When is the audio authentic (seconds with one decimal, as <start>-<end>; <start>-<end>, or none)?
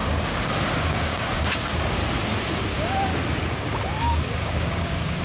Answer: 0.0-0.8; 2.0-2.7; 3.1-3.9